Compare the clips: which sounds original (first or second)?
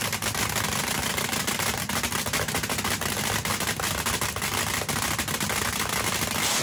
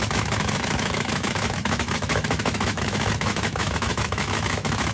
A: first